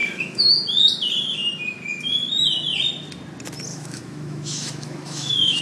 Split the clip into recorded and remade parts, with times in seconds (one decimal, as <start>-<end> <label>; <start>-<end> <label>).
0.0-0.5 remade; 0.5-3.7 recorded; 3.7-5.6 remade